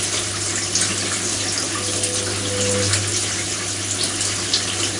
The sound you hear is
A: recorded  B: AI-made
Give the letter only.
A